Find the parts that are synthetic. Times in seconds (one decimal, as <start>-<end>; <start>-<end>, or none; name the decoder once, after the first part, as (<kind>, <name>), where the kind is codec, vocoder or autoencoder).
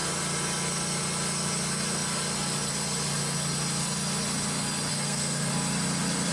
4.9-5.5 (codec, SNAC)